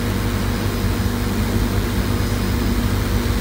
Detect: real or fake real